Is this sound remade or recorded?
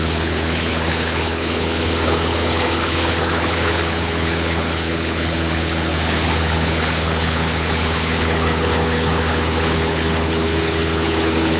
remade